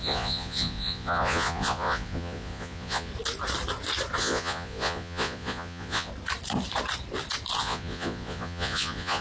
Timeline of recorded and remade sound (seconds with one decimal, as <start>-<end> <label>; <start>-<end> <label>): 0.0-3.1 remade; 3.1-4.2 recorded; 4.2-6.1 remade; 6.1-7.6 recorded; 7.6-9.2 remade